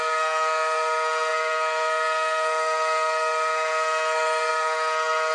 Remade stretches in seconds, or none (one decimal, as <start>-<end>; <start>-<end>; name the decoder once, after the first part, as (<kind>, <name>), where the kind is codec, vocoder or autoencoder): 0.0-5.3 (codec, SNAC)